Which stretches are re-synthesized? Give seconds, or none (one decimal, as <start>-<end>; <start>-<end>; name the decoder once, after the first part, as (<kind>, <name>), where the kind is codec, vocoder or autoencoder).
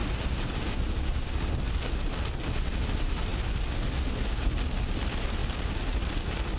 none